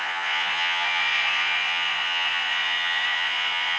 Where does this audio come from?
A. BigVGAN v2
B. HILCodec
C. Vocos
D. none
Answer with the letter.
C